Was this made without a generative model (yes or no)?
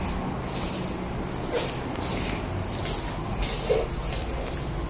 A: yes